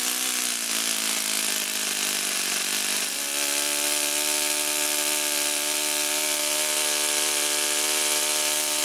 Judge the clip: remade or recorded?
recorded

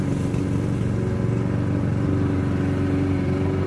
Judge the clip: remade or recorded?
recorded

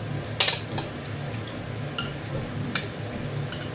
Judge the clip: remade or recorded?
recorded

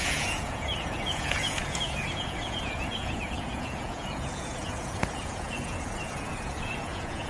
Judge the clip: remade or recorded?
remade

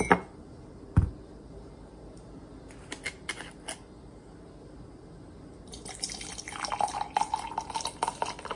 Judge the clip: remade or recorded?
recorded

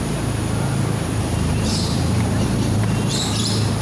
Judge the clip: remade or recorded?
remade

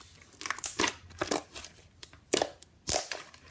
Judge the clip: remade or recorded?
recorded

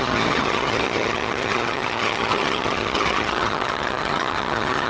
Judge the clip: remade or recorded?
remade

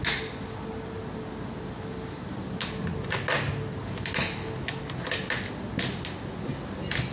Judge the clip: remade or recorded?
recorded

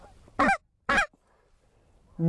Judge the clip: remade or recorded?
recorded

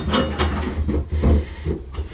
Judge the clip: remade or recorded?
recorded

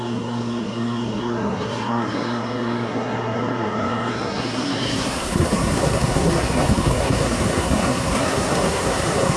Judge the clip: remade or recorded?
remade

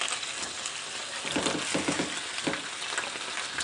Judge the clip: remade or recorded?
recorded